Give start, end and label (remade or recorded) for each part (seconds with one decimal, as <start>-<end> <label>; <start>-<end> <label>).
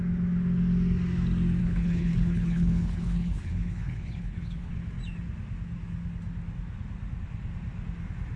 0.0-1.6 recorded; 1.6-4.7 remade; 4.7-8.4 recorded